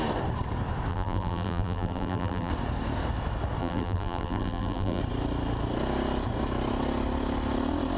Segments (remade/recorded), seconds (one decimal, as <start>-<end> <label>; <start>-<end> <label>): 0.0-0.9 recorded; 0.9-2.5 remade; 2.5-3.6 recorded; 3.6-5.0 remade; 5.0-8.0 recorded